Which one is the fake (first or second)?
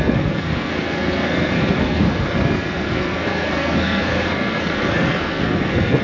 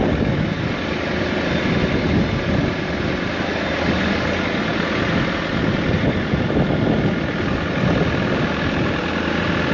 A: first